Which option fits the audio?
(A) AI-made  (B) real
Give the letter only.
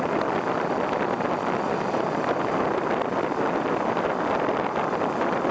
B